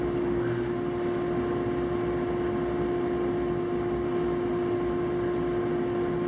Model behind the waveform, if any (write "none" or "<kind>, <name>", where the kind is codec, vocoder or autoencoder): none